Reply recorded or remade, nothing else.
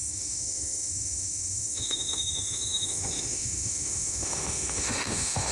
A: remade